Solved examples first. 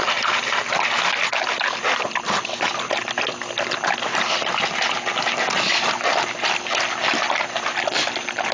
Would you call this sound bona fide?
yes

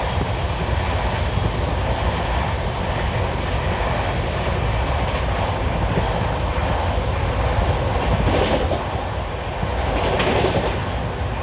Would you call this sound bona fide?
yes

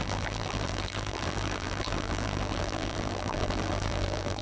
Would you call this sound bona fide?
no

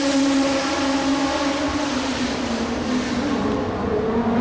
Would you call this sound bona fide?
yes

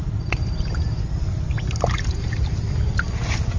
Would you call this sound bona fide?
yes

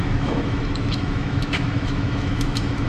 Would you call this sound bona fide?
no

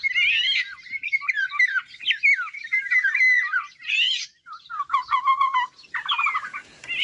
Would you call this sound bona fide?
yes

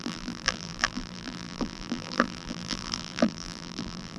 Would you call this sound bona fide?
no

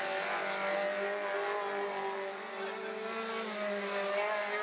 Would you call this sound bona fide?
yes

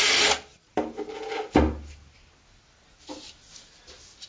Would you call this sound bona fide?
yes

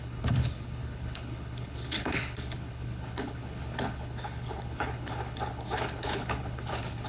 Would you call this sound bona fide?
no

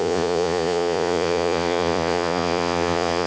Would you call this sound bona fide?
no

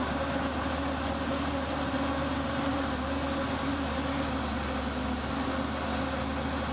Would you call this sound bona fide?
yes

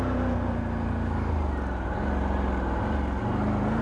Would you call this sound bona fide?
yes